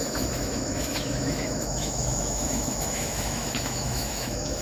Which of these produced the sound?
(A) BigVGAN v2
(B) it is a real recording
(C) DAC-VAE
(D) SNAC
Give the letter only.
C